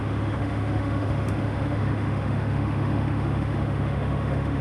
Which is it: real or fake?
fake